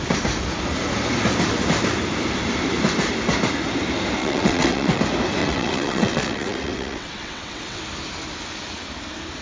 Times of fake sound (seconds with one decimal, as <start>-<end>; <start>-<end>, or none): 4.2-5.0; 5.4-7.8